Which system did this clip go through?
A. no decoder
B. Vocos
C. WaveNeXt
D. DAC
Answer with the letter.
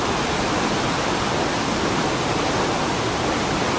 A